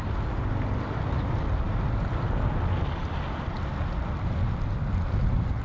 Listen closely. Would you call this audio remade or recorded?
recorded